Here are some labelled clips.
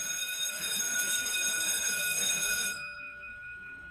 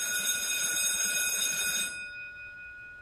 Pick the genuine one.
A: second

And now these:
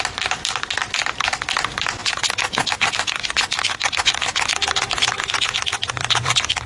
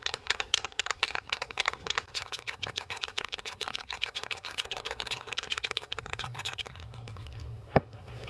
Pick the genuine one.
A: first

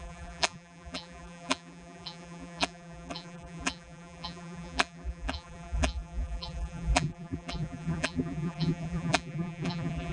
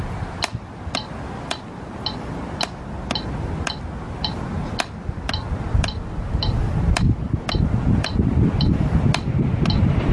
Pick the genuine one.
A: second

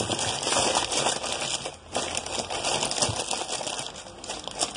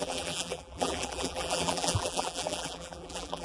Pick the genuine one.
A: first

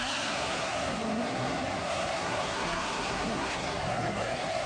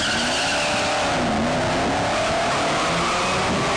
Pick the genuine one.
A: second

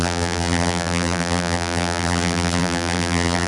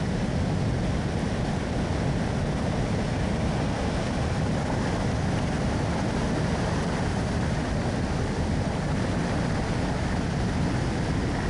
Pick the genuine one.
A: second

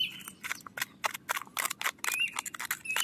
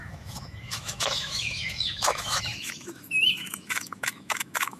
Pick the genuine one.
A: first